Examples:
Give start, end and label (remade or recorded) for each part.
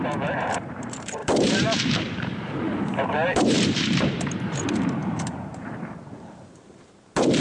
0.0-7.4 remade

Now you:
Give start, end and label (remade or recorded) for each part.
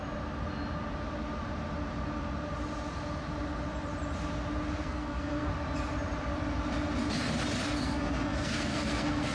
0.0-4.8 recorded; 4.8-5.5 remade; 5.5-7.8 recorded; 7.8-9.3 remade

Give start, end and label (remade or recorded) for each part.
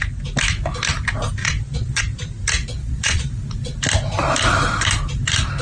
0.0-1.4 recorded; 1.4-2.0 remade; 2.0-2.8 recorded; 2.8-3.4 remade; 3.4-5.6 recorded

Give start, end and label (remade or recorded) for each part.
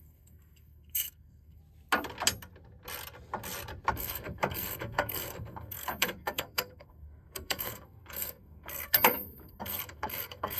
0.0-1.6 remade; 1.6-3.9 recorded; 3.9-10.6 remade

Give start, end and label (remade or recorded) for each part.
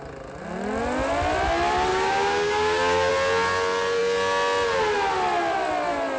0.0-1.9 recorded; 1.9-3.1 remade; 3.1-6.2 recorded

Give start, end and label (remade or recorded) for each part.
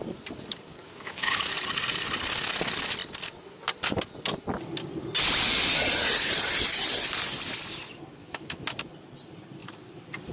0.0-0.8 recorded; 0.8-1.5 remade; 1.5-8.2 recorded; 8.2-8.8 remade; 8.8-10.3 recorded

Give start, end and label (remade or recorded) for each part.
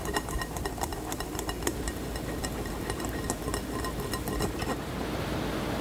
0.0-5.8 recorded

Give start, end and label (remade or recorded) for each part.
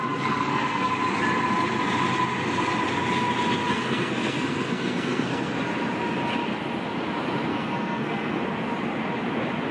0.0-0.9 remade; 0.9-3.7 recorded; 3.7-5.6 remade; 5.6-7.5 recorded; 7.5-8.4 remade; 8.4-9.7 recorded